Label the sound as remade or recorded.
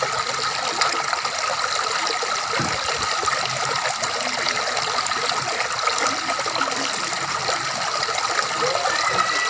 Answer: recorded